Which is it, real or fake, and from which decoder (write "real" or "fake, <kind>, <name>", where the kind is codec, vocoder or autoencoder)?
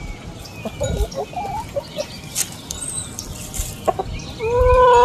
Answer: real